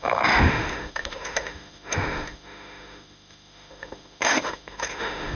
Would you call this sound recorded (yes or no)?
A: no